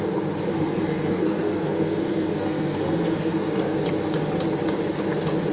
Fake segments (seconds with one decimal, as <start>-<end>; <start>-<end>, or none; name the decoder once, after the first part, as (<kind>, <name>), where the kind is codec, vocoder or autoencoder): 0.5-3.8 (codec, SNAC)